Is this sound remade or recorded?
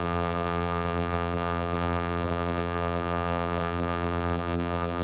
remade